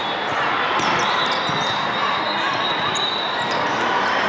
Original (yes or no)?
yes